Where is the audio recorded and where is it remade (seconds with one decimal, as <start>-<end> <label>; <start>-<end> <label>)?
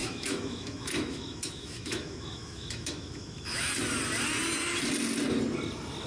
0.0-3.7 remade; 3.7-6.1 recorded